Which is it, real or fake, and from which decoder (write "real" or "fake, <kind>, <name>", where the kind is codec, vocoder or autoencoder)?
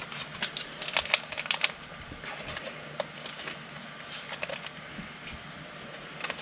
real